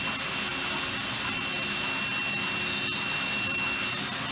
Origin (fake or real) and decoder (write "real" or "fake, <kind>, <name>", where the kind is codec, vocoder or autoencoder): real